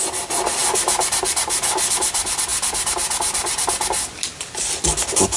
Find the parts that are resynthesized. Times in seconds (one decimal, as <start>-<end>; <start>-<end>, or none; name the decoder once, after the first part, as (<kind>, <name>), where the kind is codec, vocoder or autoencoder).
none